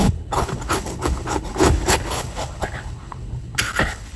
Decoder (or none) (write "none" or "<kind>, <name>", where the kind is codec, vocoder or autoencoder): codec, HILCodec